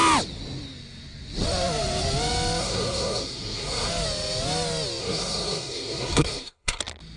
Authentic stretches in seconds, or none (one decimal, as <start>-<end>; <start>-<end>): 0.0-2.6; 3.9-5.0; 6.8-7.2